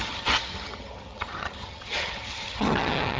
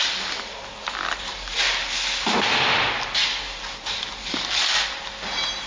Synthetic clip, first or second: first